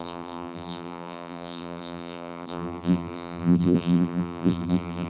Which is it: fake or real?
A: fake